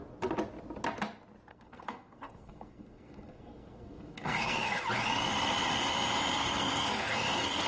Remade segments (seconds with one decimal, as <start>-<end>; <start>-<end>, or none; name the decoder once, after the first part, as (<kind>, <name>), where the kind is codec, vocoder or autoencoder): 1.5-4.8 (codec, SNAC); 6.4-7.7